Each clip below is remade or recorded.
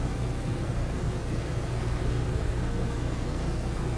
remade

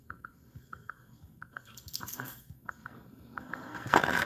remade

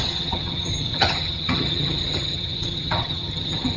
remade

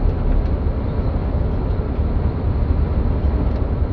recorded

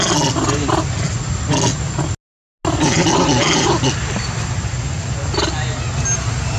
recorded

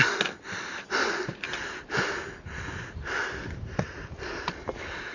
recorded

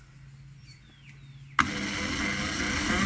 recorded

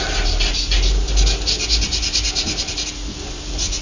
recorded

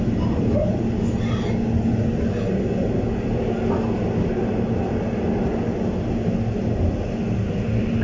recorded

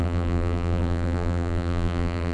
remade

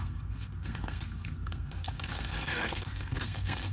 remade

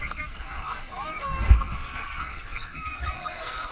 remade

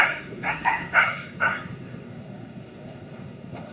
remade